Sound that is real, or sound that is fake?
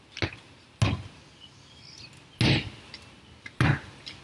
real